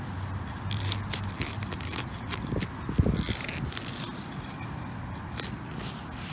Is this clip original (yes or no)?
yes